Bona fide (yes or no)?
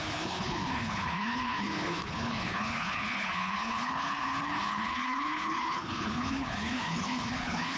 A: no